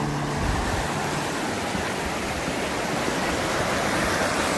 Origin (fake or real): real